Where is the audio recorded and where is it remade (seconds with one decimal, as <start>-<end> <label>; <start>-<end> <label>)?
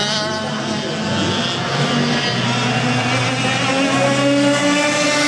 0.0-5.3 recorded